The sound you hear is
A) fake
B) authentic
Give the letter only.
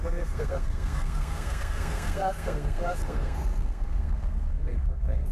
A